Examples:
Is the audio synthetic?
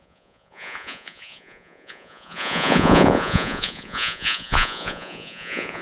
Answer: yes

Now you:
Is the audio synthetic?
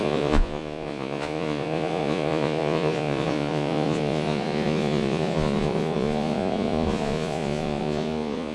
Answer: yes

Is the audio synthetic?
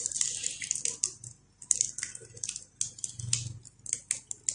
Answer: no